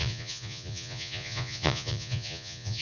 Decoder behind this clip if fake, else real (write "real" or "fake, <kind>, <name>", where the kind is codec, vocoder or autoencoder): fake, vocoder, Vocos